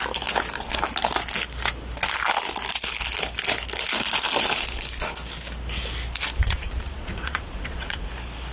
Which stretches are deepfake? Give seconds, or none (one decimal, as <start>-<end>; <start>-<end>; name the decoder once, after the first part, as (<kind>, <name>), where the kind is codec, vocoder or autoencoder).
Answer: 6.4-8.1 (vocoder, Vocos)